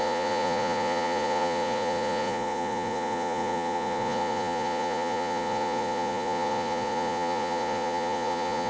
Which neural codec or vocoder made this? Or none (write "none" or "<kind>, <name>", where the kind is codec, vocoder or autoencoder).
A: vocoder, Vocos